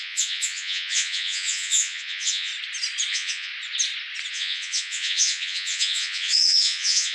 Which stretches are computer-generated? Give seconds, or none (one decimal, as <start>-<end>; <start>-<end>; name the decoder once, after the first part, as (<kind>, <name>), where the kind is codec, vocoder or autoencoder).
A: 0.0-2.5 (vocoder, Vocos); 3.1-3.5; 4.3-7.1